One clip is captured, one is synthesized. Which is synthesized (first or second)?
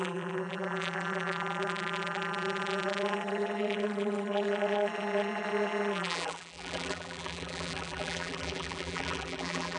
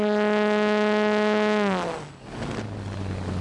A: first